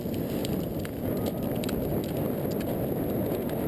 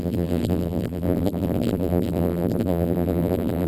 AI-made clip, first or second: second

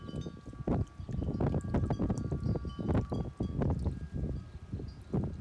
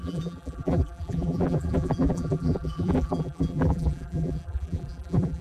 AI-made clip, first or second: second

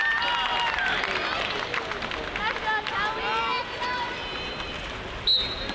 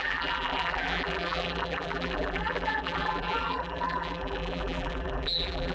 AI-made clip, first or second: second